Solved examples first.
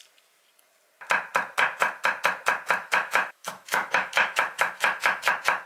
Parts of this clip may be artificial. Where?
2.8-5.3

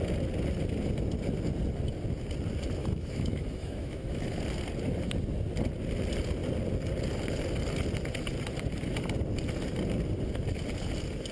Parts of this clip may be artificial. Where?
2.8-4.4

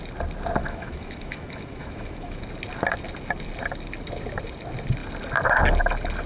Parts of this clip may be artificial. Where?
0.6-2.4

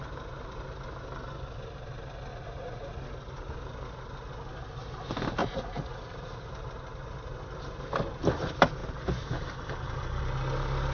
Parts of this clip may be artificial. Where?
2.3-2.9; 5.4-6.5

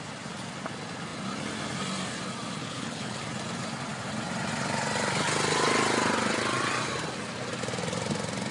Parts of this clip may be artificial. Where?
2.6-3.2

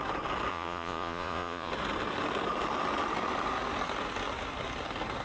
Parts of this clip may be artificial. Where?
0.5-1.7

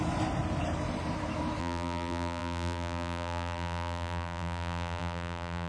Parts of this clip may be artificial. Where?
1.6-5.7